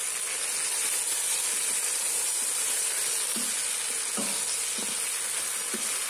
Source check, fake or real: real